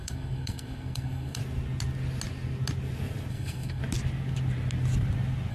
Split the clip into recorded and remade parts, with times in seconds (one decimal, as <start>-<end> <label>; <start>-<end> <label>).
0.0-1.4 remade; 1.4-3.3 recorded; 3.3-3.8 remade; 3.8-5.5 recorded